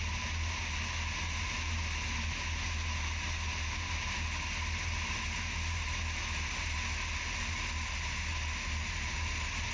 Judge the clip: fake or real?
real